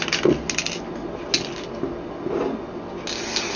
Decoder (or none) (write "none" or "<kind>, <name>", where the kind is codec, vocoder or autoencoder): none